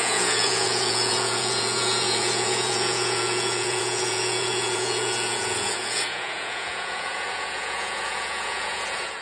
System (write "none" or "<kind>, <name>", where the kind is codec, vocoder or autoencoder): vocoder, Vocos